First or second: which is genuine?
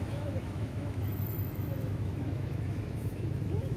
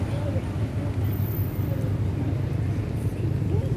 second